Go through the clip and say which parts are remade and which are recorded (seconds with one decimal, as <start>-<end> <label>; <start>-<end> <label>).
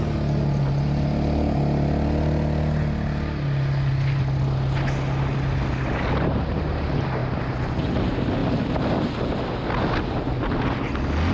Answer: 0.0-11.3 recorded